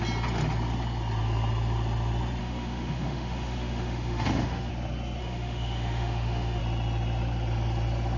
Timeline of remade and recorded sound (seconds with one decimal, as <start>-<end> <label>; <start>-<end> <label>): 0.0-2.4 recorded; 2.4-4.7 remade; 4.7-5.2 recorded; 5.2-6.6 remade; 6.6-8.2 recorded